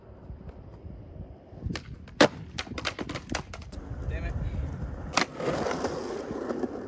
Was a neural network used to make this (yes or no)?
yes